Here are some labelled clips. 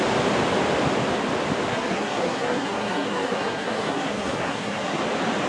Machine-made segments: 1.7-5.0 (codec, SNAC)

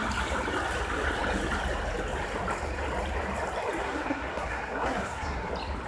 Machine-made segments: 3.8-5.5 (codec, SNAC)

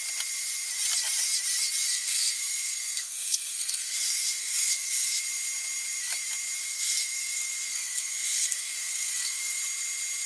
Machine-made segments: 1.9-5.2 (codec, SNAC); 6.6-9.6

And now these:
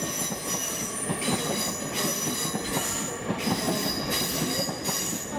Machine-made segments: none

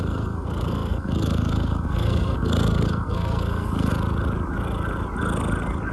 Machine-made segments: 0.0-3.9 (codec, SNAC)

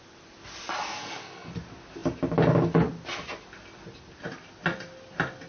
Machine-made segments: 0.8-1.5 (codec, SNAC)

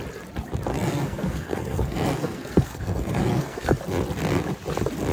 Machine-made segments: 0.7-3.8 (codec, SNAC)

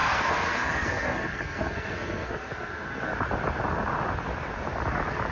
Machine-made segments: 0.0-3.1 (codec, SNAC)